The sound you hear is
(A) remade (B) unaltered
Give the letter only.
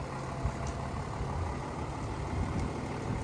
B